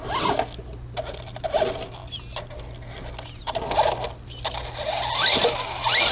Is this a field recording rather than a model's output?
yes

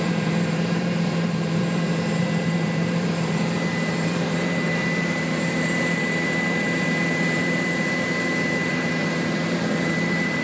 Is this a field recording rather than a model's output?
no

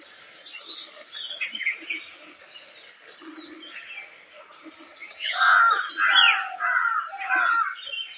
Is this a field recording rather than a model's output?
yes